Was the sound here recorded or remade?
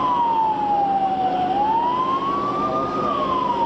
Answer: recorded